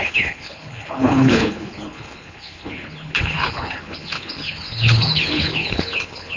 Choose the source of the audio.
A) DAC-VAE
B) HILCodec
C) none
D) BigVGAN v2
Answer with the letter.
B